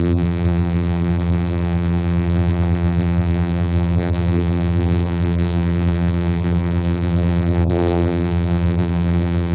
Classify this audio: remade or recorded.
remade